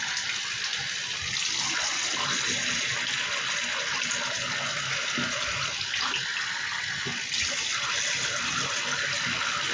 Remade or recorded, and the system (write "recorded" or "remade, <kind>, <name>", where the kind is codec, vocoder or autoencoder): recorded